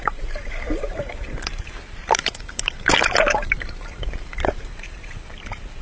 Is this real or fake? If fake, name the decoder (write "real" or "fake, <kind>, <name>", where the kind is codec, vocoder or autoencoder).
fake, vocoder, BigVGAN v2